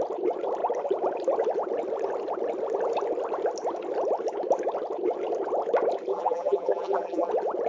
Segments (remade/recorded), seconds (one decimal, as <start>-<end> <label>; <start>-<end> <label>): 0.0-6.1 recorded; 6.1-7.3 remade; 7.3-7.7 recorded